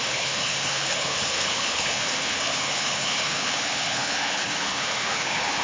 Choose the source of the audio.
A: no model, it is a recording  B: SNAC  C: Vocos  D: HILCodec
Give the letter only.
D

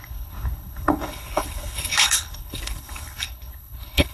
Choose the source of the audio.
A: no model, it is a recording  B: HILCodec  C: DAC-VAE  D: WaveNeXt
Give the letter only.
B